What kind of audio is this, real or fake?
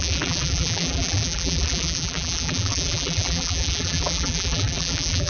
fake